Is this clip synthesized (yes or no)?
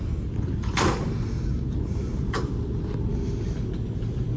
no